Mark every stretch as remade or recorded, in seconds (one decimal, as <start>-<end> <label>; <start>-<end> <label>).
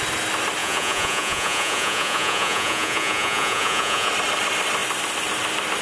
0.0-0.6 recorded; 0.6-4.1 remade; 4.1-5.8 recorded